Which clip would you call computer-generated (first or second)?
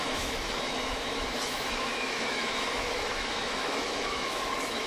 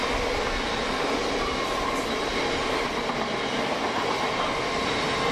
first